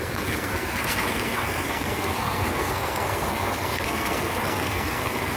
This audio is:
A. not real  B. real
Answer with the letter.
A